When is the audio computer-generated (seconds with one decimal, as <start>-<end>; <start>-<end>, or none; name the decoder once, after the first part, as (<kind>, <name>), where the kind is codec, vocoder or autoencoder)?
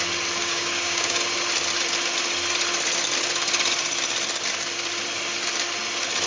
0.4-1.2 (codec, DAC)